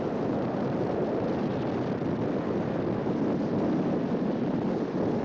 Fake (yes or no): no